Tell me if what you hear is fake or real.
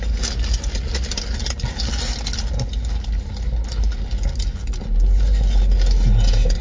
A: real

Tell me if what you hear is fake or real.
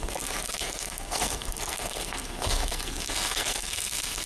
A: fake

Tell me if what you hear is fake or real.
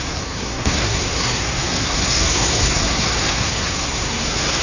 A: fake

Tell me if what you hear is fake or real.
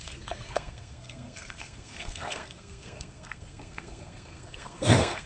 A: fake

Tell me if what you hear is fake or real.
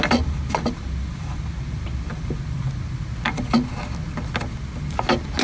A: real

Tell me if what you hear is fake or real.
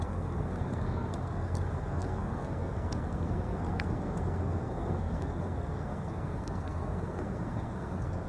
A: fake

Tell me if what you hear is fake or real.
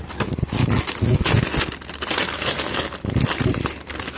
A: real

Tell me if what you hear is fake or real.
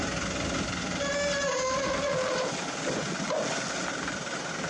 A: real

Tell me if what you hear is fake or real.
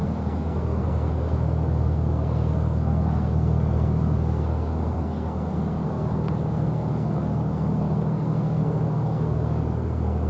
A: fake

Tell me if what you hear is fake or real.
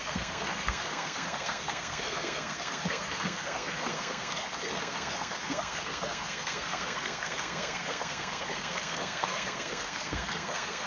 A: fake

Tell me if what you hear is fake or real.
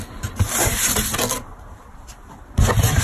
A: real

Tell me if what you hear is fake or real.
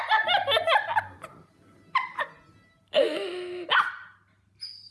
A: real